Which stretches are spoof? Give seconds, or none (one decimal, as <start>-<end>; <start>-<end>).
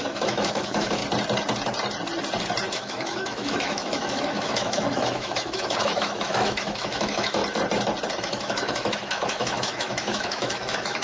0.0-1.0; 2.7-7.4; 8.2-11.0